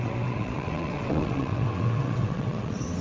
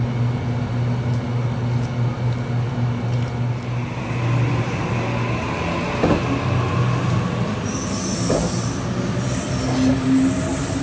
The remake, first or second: first